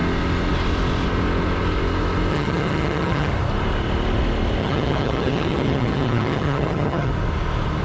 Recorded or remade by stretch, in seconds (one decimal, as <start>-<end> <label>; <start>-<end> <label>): 0.0-2.3 recorded; 2.3-3.3 remade; 3.3-4.6 recorded; 4.6-7.1 remade; 7.1-7.8 recorded

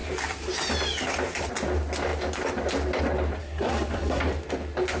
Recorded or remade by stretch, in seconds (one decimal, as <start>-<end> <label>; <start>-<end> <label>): 0.0-3.4 recorded; 3.4-4.2 remade; 4.2-5.0 recorded

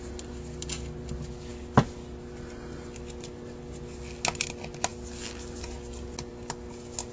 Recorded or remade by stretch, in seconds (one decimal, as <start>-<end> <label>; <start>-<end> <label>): 0.0-7.1 recorded